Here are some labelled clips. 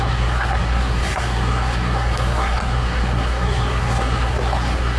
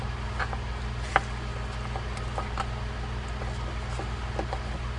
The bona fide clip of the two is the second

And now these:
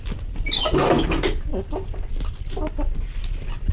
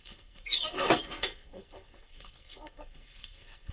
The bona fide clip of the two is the first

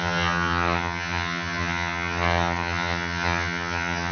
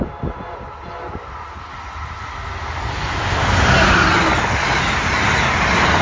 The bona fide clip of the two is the second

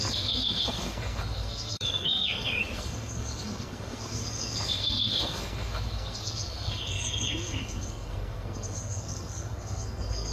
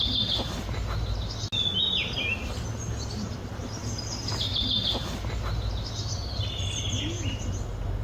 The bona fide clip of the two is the second